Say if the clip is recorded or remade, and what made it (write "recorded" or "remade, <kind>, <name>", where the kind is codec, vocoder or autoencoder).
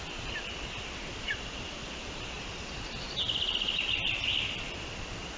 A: recorded